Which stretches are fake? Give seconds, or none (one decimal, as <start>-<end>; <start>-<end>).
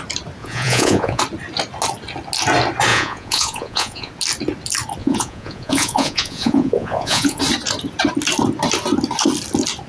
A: 0.4-1.2; 2.9-4.1; 5.0-7.4